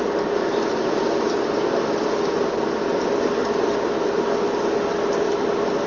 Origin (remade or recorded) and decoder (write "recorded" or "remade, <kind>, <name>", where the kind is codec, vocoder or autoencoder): recorded